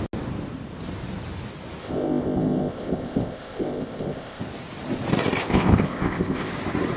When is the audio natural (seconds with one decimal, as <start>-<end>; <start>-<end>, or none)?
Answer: 0.0-1.8; 4.4-5.4; 6.5-7.0